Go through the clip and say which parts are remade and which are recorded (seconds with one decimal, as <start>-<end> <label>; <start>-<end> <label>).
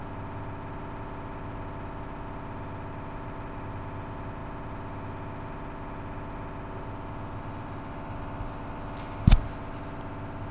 0.0-10.5 recorded